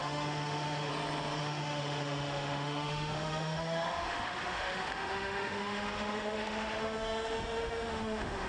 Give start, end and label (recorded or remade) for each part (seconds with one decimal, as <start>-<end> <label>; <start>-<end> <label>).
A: 0.0-0.9 remade; 0.9-1.4 recorded; 1.4-8.5 remade